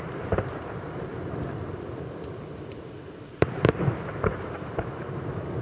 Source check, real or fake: fake